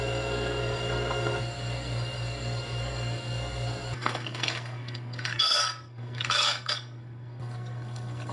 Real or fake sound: fake